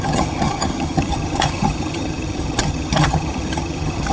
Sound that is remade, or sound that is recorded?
remade